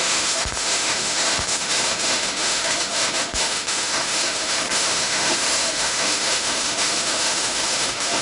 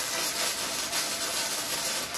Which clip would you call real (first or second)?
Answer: second